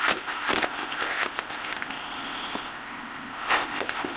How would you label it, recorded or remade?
remade